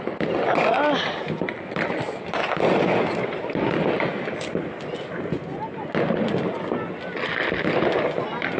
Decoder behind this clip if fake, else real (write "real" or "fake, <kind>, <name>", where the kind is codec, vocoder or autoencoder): real